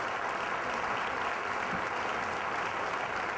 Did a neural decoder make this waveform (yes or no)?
no